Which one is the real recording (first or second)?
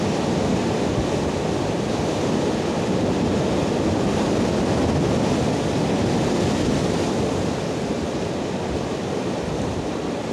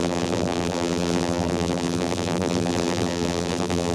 first